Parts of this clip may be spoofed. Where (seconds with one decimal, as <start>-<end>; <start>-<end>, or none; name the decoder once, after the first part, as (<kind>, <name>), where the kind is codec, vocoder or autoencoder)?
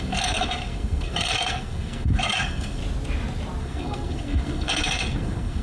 0.0-2.8 (codec, SNAC); 3.6-5.6